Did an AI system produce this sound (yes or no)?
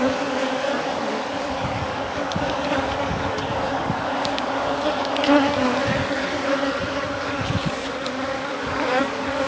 yes